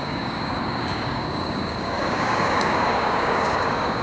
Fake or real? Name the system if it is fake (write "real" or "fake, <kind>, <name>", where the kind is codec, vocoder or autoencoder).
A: fake, codec, DAC